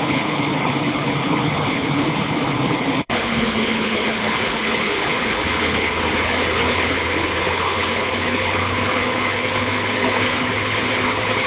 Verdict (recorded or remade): remade